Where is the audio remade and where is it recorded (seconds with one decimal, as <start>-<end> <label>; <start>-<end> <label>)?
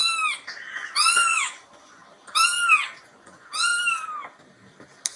0.0-0.7 recorded; 0.7-2.0 remade; 2.0-3.0 recorded; 3.0-3.7 remade; 3.7-5.2 recorded